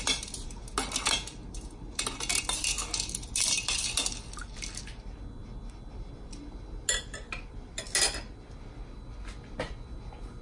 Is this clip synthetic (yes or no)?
no